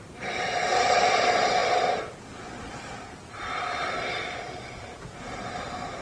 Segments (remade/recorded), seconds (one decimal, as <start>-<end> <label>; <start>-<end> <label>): 0.0-6.0 recorded